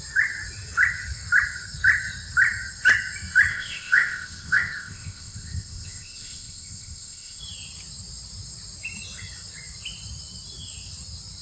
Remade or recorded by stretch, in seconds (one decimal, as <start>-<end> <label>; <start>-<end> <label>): 0.0-3.5 recorded; 3.5-7.4 remade; 7.4-11.4 recorded